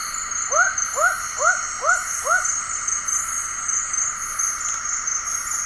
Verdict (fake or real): real